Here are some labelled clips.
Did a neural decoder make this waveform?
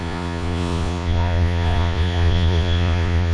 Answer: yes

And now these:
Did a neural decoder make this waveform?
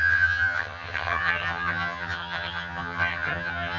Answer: yes